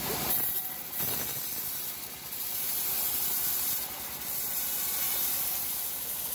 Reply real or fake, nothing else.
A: fake